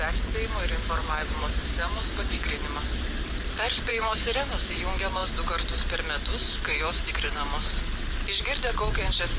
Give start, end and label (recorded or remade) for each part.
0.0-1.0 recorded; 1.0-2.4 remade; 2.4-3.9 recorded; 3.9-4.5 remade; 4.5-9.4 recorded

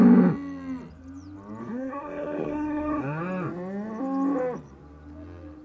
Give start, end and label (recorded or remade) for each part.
0.0-1.6 recorded; 1.6-3.2 remade; 3.2-5.6 recorded

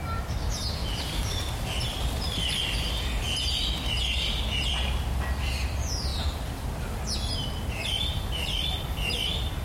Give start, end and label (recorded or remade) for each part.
0.0-0.8 recorded; 0.8-2.6 remade; 2.6-6.1 recorded; 6.1-6.8 remade; 6.8-9.6 recorded